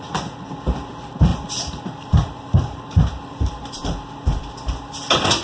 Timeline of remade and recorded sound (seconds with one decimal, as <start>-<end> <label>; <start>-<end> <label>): 0.0-1.3 recorded; 1.3-4.5 remade; 4.5-5.4 recorded